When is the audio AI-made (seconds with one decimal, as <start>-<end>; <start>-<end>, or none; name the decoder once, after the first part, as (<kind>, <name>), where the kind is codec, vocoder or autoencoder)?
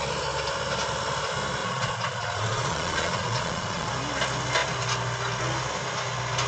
1.6-3.9 (vocoder, Vocos)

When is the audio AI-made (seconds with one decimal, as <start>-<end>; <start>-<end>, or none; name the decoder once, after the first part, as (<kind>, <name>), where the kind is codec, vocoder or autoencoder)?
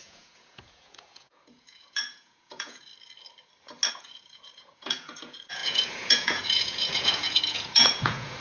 0.0-2.9 (vocoder, Vocos); 3.9-8.4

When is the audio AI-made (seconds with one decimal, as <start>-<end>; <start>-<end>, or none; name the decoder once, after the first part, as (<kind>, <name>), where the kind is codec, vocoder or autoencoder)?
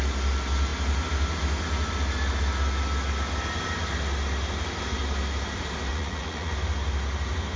5.9-6.5 (vocoder, Vocos)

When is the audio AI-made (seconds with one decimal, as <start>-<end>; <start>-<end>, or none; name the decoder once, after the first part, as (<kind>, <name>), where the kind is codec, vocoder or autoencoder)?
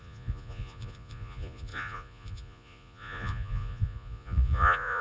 0.0-5.0 (vocoder, Vocos)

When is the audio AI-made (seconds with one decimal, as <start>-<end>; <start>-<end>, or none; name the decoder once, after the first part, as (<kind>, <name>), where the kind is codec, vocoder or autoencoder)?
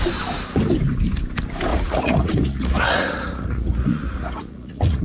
1.7-5.0 (vocoder, Vocos)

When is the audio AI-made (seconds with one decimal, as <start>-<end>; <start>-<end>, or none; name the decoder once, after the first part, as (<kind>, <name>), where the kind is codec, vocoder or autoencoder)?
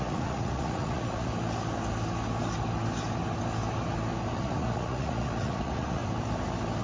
0.0-1.3 (vocoder, Vocos); 4.4-6.0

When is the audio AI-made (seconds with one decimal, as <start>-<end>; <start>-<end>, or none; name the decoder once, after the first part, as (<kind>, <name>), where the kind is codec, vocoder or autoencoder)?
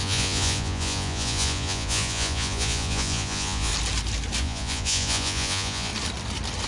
0.0-3.7 (vocoder, Vocos); 4.4-5.9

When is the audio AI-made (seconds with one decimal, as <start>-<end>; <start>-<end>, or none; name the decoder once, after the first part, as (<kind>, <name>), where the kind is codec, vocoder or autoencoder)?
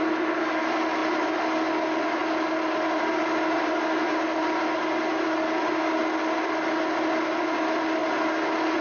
none